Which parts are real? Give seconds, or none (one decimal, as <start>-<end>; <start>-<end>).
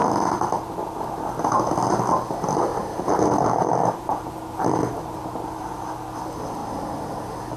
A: 0.0-2.7; 5.9-6.6